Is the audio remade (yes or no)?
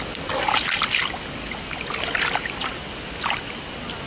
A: no